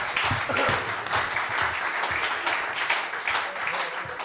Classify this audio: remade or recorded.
recorded